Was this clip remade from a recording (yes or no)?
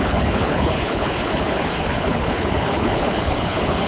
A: yes